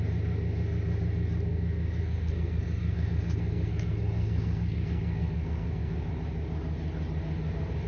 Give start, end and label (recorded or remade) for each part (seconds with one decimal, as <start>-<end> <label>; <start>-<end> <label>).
0.0-1.5 recorded; 1.5-6.1 remade; 6.1-7.9 recorded